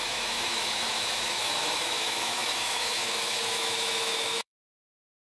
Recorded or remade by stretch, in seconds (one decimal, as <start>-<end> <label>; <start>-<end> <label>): 0.0-5.3 remade